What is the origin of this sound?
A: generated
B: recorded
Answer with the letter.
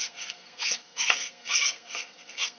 A